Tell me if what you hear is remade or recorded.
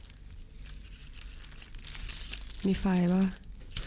recorded